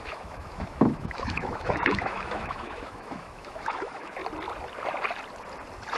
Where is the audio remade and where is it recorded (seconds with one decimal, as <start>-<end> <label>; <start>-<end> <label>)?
0.0-4.2 remade; 4.2-6.0 recorded